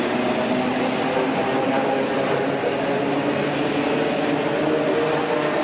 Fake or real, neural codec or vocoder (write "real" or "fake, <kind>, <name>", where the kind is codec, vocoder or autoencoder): real